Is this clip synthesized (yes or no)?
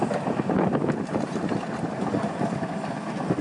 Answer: no